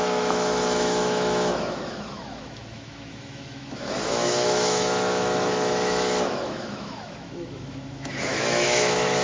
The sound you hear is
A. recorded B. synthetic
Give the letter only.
B